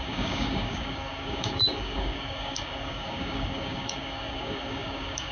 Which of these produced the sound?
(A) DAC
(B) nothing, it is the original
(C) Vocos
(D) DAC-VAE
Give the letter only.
A